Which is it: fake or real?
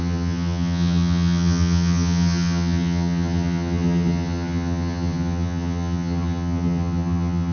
fake